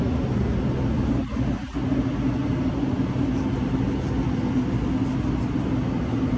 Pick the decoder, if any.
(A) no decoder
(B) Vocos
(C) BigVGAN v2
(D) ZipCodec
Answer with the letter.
A